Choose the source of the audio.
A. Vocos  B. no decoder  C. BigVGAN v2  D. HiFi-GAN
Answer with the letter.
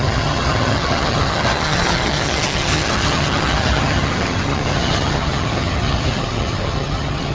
D